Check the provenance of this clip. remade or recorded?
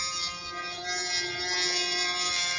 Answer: recorded